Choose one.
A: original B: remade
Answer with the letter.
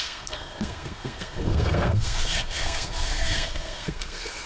B